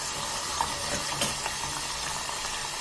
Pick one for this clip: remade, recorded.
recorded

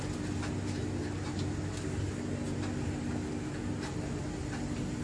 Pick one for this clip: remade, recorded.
recorded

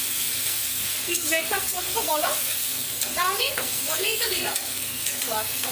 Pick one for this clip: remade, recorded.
remade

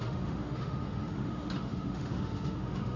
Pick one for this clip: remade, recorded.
remade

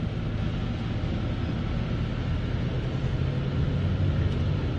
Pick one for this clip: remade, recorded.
recorded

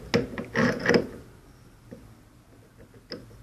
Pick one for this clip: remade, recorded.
recorded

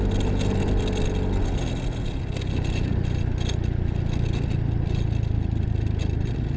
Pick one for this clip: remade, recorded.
recorded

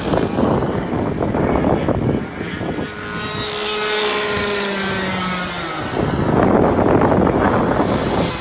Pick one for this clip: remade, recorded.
recorded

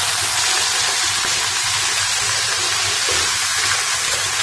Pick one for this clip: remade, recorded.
recorded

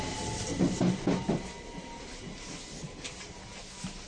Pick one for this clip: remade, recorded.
recorded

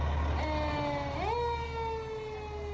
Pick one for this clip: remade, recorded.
recorded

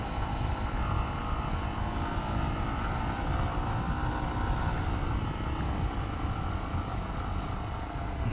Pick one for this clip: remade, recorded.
recorded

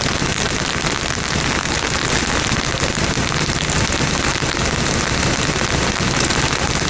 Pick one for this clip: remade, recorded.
recorded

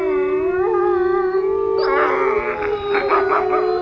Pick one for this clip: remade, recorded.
recorded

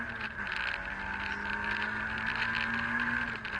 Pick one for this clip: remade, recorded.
recorded